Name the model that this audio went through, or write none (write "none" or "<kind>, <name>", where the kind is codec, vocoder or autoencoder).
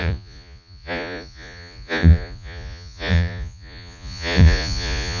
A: vocoder, Vocos